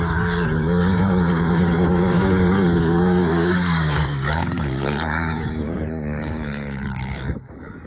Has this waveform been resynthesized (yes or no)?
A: yes